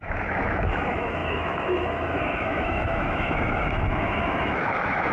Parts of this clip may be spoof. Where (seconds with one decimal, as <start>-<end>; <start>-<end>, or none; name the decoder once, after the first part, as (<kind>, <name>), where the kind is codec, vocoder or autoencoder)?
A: 0.0-5.1 (autoencoder, DAC-VAE)